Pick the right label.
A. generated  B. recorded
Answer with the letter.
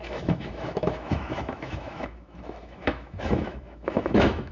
A